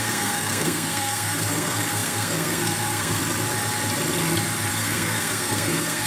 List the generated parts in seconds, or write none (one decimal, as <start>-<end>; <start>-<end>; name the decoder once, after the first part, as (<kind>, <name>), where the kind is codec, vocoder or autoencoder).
0.0-3.2 (codec, SNAC); 4.7-6.1

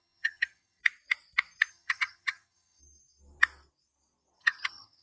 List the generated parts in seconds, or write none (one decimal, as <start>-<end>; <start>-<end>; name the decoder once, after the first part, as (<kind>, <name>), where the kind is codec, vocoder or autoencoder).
0.0-0.8 (vocoder, HiFi-GAN); 1.7-2.8; 4.4-5.0

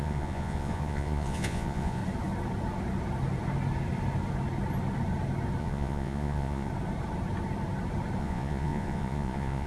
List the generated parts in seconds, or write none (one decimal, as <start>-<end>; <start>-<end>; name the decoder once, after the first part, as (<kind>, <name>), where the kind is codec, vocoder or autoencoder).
0.0-2.0 (vocoder, Vocos); 5.6-6.7; 8.2-9.7